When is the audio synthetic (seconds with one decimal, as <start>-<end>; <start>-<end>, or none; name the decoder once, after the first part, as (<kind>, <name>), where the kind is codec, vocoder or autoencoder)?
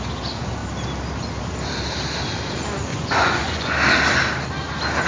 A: 2.9-3.7 (vocoder, Vocos)